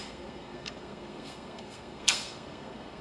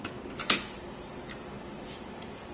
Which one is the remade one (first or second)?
first